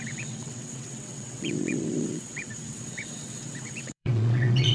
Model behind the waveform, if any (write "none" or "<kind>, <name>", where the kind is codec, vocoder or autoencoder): vocoder, WaveNeXt